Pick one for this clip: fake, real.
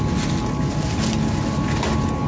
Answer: real